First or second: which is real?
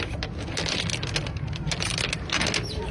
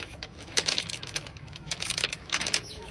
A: first